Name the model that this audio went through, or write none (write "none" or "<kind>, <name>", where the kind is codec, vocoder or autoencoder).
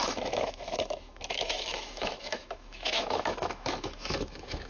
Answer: autoencoder, DAC-VAE